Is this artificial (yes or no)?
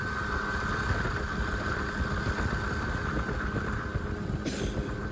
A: no